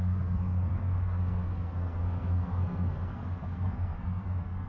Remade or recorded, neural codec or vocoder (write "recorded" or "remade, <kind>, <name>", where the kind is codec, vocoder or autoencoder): remade, codec, SNAC